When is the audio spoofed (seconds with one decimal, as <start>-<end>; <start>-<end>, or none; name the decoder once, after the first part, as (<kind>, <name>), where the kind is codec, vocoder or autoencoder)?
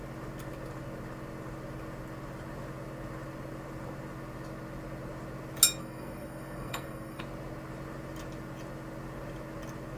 5.8-7.2 (codec, SNAC)